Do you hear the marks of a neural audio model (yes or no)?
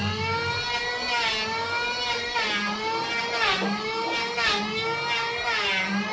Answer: no